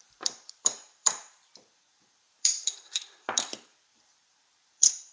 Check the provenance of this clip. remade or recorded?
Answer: remade